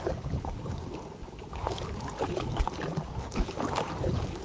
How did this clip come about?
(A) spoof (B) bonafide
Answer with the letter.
A